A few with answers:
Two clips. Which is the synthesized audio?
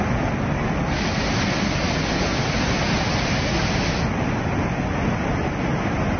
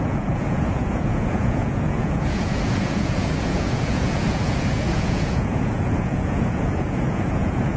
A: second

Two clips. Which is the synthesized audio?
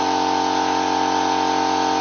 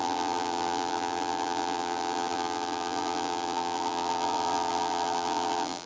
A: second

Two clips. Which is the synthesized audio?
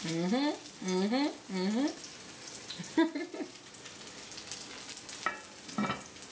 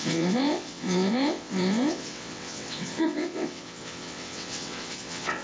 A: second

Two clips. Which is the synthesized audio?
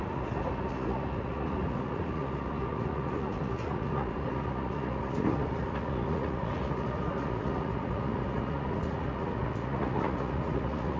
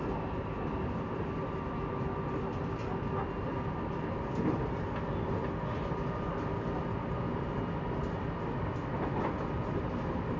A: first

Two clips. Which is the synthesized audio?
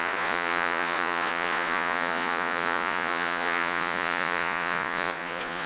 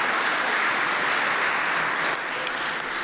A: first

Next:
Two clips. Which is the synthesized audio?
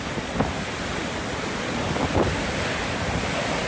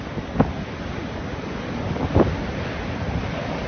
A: first